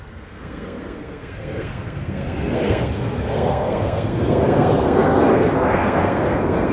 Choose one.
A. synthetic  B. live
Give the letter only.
A